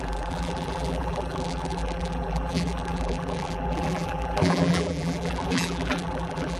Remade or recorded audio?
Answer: remade